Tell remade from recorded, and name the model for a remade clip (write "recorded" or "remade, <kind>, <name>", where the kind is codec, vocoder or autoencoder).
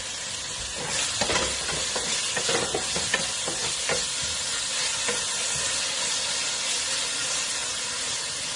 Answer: recorded